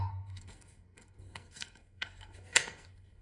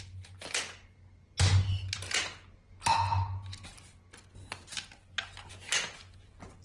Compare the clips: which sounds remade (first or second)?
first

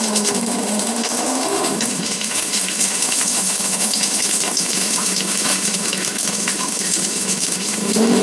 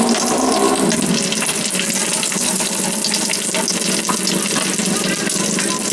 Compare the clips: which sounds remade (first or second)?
first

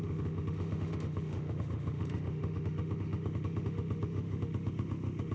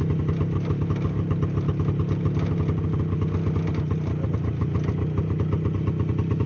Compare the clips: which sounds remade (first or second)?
first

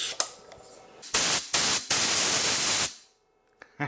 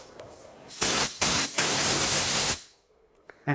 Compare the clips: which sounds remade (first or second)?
second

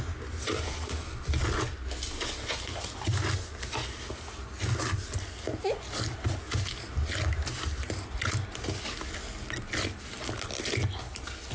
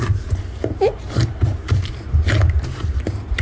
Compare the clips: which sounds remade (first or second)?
second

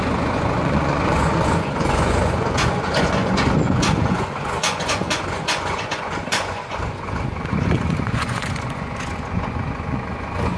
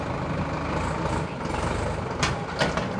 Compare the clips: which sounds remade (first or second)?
first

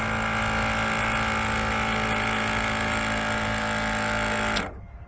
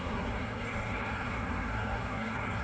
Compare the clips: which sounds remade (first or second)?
second